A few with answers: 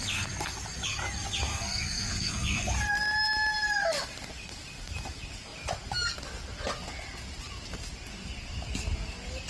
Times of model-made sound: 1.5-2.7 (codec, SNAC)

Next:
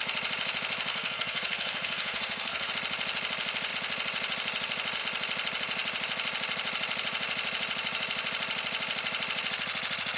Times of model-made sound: 0.9-2.7 (codec, SNAC)

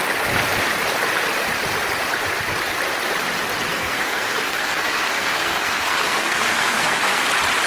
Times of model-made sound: 3.7-7.2 (codec, SNAC)

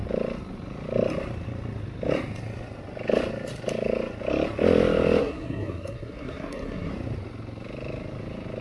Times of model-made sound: 5.2-6.9 (codec, SNAC)